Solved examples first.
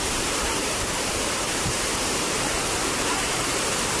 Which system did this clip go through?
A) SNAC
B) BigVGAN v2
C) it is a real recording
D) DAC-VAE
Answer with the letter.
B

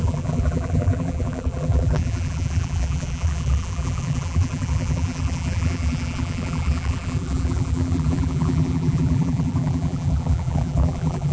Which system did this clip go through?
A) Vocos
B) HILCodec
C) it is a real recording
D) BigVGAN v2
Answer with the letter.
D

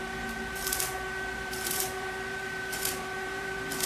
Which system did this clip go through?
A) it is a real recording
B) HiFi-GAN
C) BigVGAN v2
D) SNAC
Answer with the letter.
C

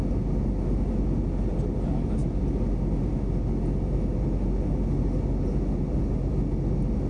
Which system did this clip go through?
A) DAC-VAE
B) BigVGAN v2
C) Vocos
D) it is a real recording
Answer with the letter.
D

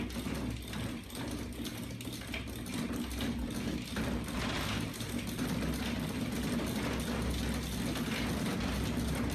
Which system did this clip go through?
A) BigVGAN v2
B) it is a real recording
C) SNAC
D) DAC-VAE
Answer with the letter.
B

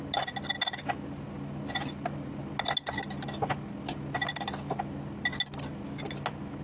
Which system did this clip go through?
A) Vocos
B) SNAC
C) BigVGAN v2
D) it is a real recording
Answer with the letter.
D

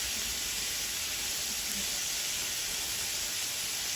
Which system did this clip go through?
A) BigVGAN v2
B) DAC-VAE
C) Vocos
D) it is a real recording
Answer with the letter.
D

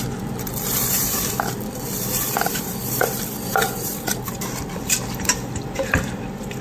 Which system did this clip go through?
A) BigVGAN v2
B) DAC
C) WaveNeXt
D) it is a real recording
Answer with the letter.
A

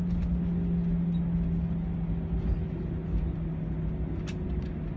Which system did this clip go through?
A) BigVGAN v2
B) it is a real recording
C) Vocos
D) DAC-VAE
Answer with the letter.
B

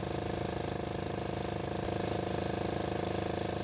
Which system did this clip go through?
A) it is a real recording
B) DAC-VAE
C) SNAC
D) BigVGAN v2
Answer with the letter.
A